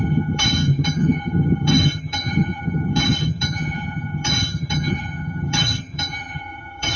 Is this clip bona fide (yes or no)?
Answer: no